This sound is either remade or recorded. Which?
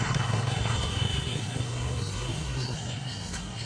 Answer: remade